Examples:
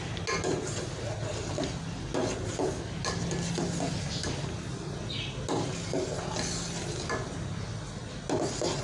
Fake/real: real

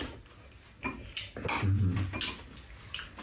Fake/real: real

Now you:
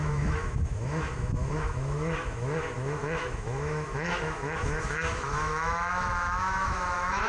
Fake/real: fake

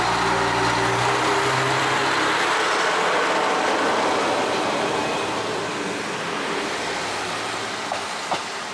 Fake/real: real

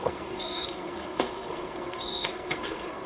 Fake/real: fake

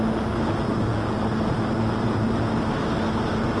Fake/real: real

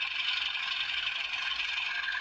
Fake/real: real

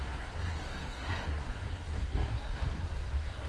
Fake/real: fake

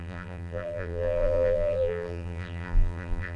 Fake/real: fake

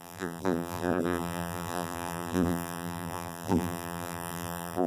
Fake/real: fake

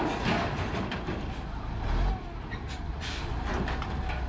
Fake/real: real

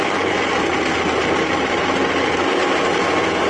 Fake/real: real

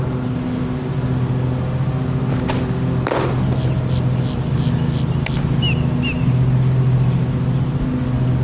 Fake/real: real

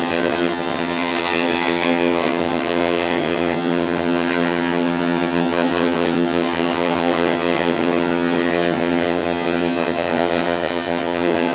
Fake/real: fake